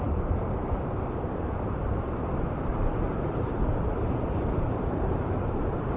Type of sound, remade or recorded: remade